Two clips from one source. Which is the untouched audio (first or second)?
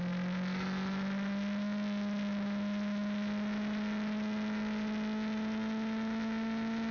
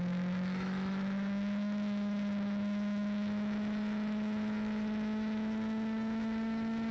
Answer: first